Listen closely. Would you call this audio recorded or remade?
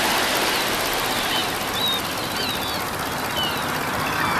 recorded